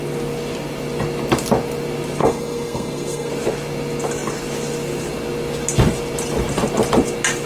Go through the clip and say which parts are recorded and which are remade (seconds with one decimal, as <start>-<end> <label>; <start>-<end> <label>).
0.0-2.2 recorded; 2.2-3.3 remade; 3.3-7.5 recorded